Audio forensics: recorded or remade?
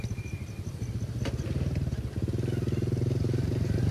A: recorded